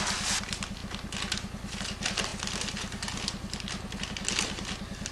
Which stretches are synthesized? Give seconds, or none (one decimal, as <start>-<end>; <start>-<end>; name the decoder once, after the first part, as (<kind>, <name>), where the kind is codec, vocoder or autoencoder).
none

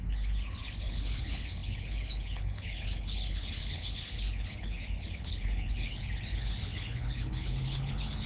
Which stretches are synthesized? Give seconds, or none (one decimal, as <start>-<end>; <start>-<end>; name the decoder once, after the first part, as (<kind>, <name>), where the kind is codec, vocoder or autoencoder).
0.0-8.3 (codec, HILCodec)

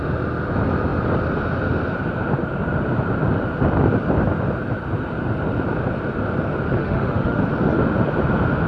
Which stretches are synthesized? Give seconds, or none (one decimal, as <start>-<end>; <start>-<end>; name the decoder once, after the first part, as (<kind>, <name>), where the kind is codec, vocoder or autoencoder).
6.8-7.4 (autoencoder, DAC-VAE)